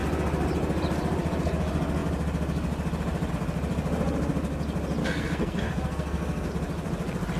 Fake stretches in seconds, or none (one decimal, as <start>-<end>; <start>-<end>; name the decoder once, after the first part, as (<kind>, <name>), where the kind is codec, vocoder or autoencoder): 5.0-6.5 (codec, SNAC)

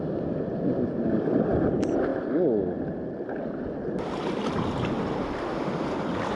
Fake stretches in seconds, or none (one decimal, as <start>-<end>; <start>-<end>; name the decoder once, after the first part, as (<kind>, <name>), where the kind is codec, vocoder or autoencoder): none

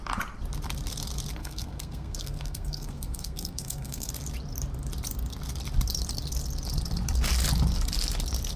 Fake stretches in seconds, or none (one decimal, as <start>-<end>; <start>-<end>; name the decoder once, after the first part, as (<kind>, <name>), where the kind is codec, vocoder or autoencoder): 1.4-4.1 (codec, SNAC)

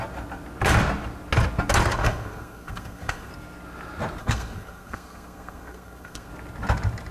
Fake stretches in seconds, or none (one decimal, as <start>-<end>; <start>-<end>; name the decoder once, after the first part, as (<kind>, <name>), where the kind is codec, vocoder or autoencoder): 2.0-3.3 (codec, SNAC); 4.2-6.3

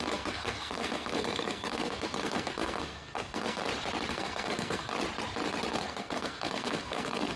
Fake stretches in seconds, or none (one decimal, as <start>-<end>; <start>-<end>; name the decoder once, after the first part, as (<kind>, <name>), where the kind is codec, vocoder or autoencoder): 0.0-3.6 (codec, SNAC); 4.1-4.9; 5.7-7.4

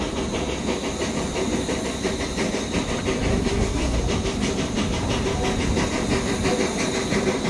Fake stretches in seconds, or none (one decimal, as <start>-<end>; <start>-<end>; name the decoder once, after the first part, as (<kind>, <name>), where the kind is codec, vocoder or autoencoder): 3.3-4.0 (codec, SNAC)

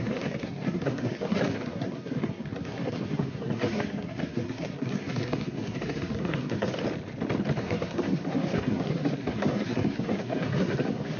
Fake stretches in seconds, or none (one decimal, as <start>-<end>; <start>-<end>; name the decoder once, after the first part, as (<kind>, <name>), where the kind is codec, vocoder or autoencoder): 0.0-6.7 (codec, SNAC); 7.6-11.2

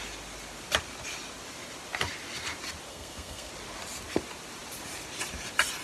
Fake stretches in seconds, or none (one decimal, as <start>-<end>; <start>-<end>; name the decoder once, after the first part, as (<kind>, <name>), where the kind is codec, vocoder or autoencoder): 2.9-3.5 (codec, SNAC)